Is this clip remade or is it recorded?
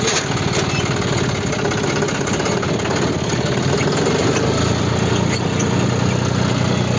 recorded